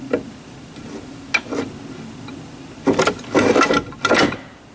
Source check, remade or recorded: recorded